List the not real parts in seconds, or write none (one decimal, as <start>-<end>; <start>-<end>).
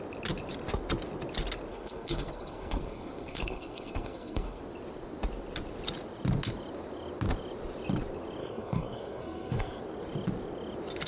1.7-4.6; 8.4-9.8